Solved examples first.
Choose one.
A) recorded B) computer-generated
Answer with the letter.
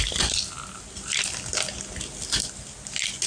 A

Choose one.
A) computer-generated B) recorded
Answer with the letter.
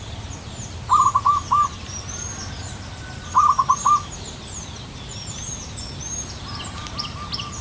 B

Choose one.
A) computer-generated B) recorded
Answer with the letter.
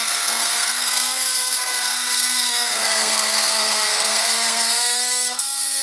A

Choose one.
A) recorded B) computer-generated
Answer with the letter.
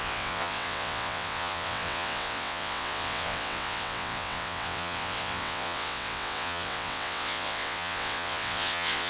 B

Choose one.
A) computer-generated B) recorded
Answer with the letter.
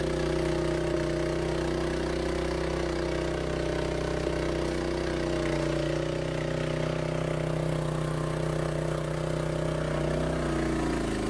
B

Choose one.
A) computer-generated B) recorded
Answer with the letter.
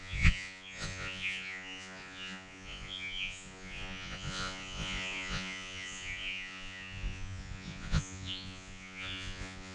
A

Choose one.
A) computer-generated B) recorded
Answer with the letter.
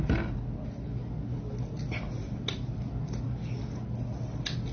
B